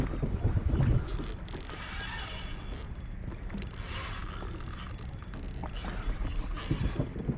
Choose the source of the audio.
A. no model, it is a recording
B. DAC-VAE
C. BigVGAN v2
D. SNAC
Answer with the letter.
A